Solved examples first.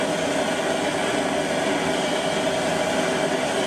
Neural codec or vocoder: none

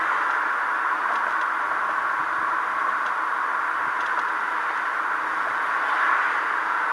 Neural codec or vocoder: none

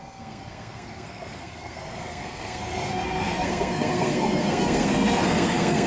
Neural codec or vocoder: codec, SNAC